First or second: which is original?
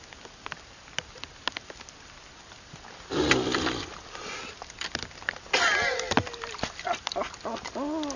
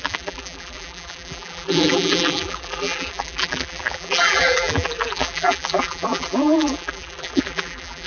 first